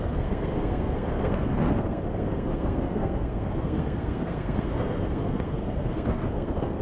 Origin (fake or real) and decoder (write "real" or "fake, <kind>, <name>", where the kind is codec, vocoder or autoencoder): fake, codec, SNAC